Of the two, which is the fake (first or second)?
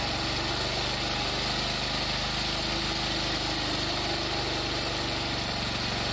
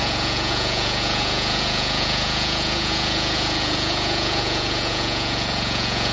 second